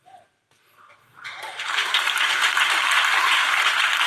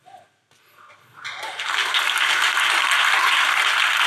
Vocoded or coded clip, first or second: first